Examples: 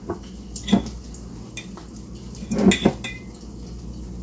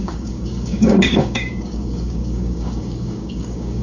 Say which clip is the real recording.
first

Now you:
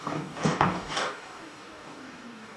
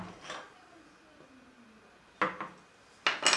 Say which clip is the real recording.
second